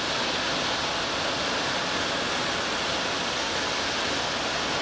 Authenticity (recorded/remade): recorded